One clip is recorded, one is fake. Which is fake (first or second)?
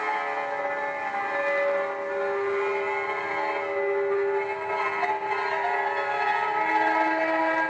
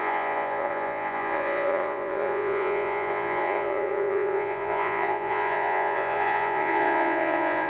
second